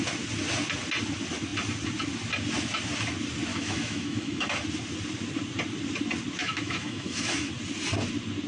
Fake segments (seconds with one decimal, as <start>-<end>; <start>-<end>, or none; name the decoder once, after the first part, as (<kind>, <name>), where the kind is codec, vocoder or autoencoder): 3.5-4.6 (autoencoder, DAC-VAE); 6.4-7.5